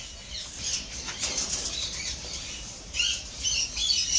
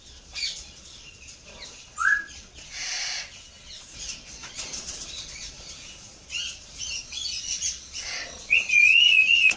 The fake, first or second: second